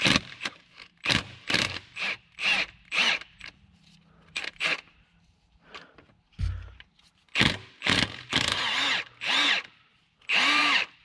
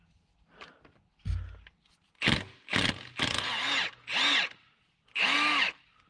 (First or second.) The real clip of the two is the second